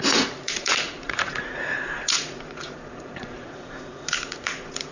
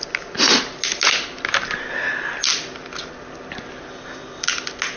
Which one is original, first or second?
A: second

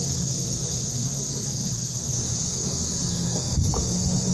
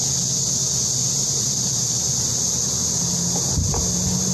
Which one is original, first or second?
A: second